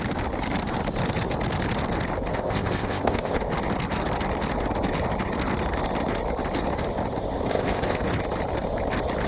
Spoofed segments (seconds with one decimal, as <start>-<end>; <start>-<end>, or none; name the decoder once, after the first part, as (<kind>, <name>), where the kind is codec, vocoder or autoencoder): 2.3-3.4 (codec, ZipCodec); 7.5-8.0